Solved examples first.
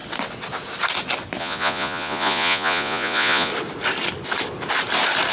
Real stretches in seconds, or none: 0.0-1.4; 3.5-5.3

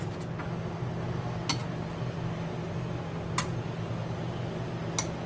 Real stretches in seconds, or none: 0.0-5.3

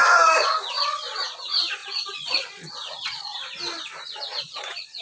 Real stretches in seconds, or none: 0.0-0.7; 3.3-4.0

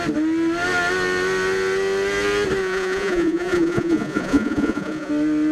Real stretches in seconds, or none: 0.0-2.6; 5.1-5.5

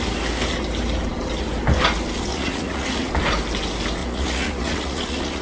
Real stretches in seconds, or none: 0.0-2.3; 3.1-4.0